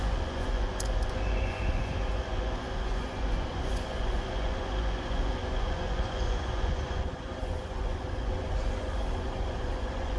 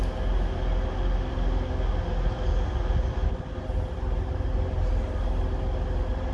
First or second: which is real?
second